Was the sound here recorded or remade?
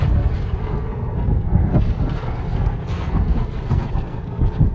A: remade